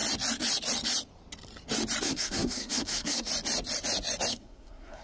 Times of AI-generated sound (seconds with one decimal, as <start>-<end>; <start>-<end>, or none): 2.0-3.3; 4.3-5.0